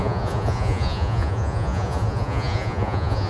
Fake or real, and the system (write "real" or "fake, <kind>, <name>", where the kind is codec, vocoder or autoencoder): fake, vocoder, Vocos